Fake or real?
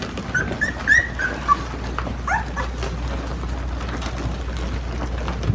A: real